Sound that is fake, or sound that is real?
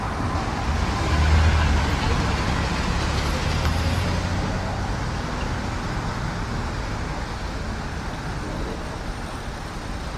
real